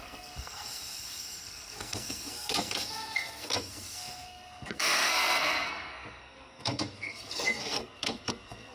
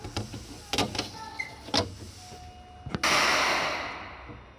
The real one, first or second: second